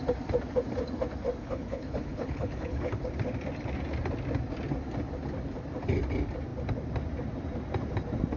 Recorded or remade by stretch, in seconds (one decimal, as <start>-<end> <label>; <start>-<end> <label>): 0.0-1.4 recorded; 1.4-3.0 remade; 3.0-8.4 recorded

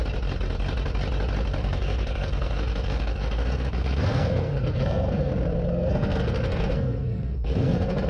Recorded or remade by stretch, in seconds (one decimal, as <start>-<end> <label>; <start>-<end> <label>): 0.0-1.6 recorded; 1.6-5.3 remade; 5.3-5.7 recorded; 5.7-8.1 remade